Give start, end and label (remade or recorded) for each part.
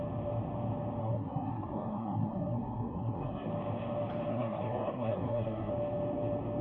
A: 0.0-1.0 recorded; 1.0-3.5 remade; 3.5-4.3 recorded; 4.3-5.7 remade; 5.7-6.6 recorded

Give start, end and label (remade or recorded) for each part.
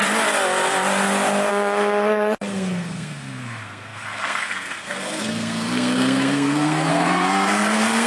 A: 0.0-1.5 recorded; 1.5-8.1 remade